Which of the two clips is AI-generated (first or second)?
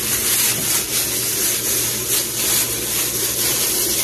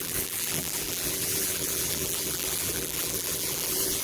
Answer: second